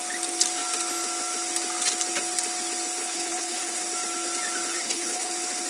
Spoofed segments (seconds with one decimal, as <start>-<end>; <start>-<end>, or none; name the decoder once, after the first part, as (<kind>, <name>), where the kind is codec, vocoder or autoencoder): 3.0-3.8 (codec, HILCodec); 4.7-5.3